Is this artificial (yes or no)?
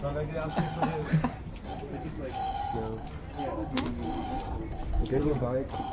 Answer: no